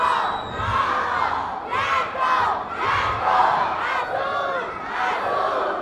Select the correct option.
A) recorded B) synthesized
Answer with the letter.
A